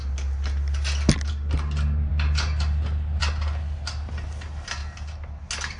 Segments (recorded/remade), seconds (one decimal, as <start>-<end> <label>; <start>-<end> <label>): 0.0-5.8 recorded